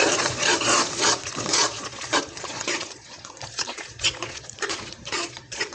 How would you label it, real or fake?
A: fake